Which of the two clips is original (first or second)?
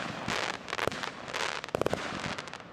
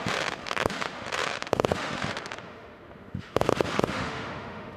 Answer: first